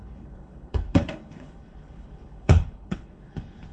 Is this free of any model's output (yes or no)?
no